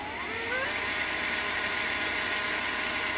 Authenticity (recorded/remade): recorded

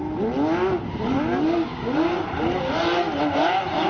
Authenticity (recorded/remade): recorded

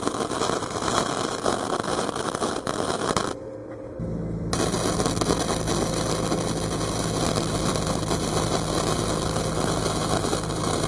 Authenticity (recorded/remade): recorded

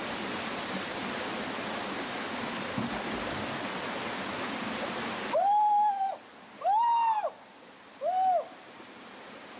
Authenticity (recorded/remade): recorded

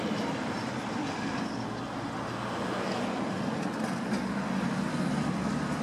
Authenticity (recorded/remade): recorded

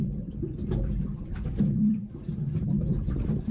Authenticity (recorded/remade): remade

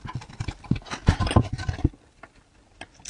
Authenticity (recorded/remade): recorded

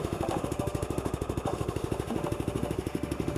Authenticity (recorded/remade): remade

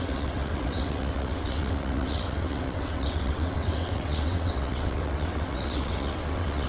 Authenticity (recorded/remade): remade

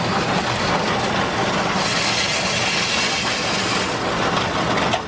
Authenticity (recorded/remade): recorded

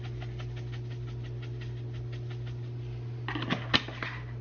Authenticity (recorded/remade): recorded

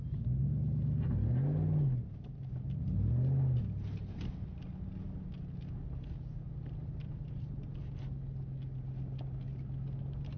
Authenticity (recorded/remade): recorded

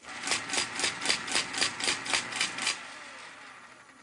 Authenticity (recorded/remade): recorded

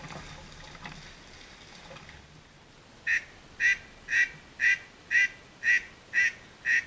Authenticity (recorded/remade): recorded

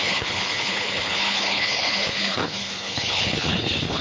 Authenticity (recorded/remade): remade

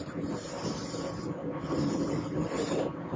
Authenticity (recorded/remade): recorded